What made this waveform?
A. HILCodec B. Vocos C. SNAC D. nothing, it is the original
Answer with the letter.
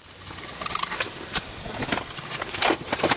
D